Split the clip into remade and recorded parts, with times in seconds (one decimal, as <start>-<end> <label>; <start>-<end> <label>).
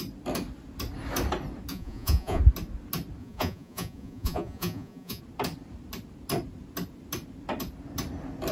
0.0-1.7 recorded; 1.7-2.4 remade; 2.4-3.2 recorded; 3.2-5.2 remade; 5.2-8.5 recorded